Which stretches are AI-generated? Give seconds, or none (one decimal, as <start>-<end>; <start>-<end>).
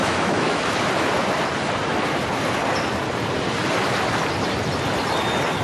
0.0-0.6